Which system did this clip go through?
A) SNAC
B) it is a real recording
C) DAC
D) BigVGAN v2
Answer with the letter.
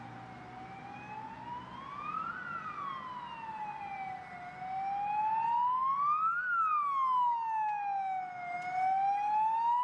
B